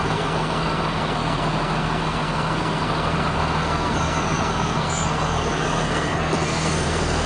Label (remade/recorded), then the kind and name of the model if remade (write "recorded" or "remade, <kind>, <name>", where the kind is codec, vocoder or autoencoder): remade, codec, SNAC